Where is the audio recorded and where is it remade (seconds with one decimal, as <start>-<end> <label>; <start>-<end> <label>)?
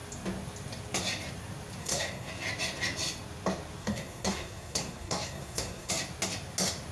0.0-1.8 recorded; 1.8-2.3 remade; 2.3-3.8 recorded; 3.8-5.9 remade; 5.9-6.9 recorded